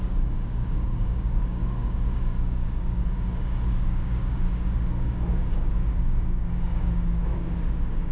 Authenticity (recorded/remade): remade